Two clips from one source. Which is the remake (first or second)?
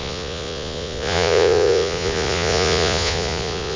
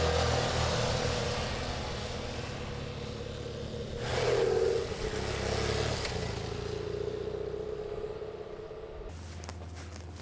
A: first